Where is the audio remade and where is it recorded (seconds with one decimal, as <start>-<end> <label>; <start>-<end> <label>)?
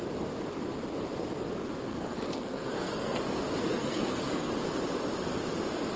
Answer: 0.0-1.9 recorded; 1.9-3.2 remade; 3.2-3.6 recorded; 3.6-4.5 remade; 4.5-6.0 recorded